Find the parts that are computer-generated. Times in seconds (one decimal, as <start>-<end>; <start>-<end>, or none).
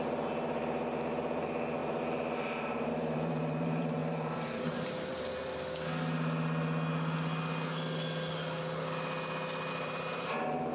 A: 0.0-5.5; 9.7-10.7